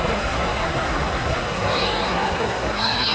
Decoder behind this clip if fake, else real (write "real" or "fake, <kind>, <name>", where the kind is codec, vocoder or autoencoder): fake, codec, SNAC